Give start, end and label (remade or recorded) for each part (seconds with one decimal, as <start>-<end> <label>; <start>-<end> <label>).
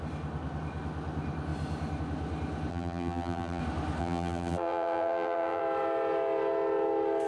0.0-2.7 recorded; 2.7-3.6 remade; 3.6-4.0 recorded; 4.0-5.6 remade; 5.6-7.3 recorded